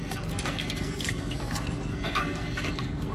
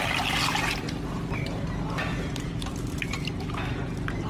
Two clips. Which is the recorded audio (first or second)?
second